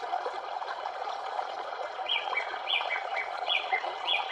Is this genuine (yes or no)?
no